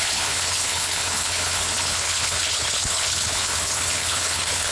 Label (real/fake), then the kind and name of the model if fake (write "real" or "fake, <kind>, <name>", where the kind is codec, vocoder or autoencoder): fake, codec, HILCodec